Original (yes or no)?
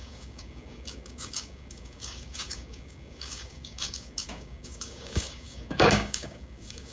no